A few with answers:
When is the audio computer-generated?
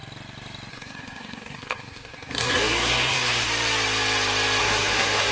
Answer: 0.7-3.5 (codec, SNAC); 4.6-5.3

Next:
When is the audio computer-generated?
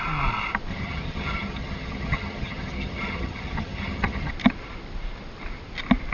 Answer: 0.7-4.3 (vocoder, HiFi-GAN)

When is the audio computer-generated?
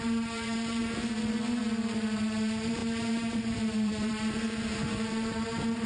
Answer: 0.0-0.8 (vocoder, BigVGAN v2); 1.6-5.9